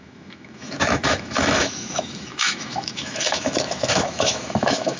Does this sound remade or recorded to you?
remade